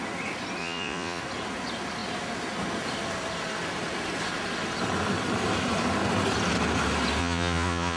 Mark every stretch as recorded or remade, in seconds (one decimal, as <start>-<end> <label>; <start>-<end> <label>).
0.0-0.6 recorded; 0.6-1.2 remade; 1.2-7.2 recorded; 7.2-8.0 remade